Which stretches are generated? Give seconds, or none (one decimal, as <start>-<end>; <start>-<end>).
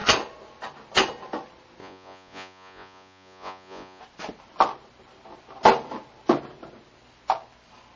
1.8-4.0